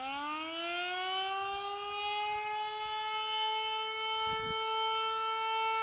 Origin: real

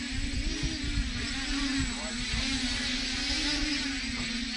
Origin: real